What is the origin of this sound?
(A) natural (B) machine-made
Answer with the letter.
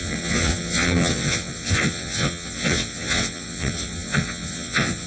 B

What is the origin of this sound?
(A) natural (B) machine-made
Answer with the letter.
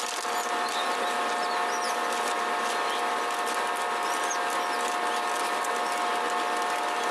A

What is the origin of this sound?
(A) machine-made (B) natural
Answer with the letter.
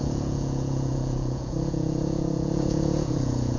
A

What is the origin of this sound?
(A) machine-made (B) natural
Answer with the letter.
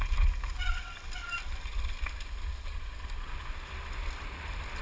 B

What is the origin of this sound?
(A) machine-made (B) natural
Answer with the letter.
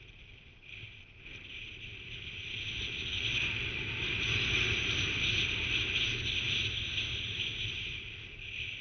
B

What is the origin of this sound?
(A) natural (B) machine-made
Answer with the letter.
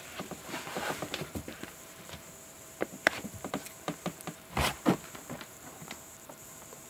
B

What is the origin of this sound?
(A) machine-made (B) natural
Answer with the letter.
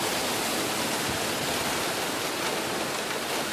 B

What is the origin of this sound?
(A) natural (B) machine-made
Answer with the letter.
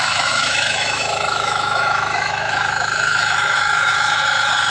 B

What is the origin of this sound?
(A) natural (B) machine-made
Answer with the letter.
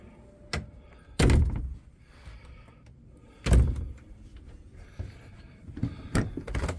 A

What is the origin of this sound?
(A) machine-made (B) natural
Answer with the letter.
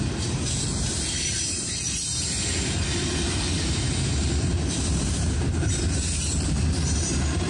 A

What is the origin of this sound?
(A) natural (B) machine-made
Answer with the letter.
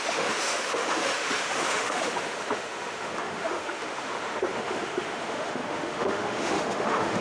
B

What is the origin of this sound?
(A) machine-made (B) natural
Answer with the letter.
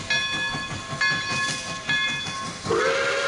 B